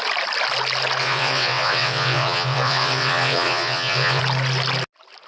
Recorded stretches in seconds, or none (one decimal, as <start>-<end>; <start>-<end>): 0.0-1.0; 4.2-5.3